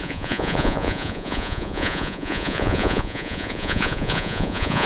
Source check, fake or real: fake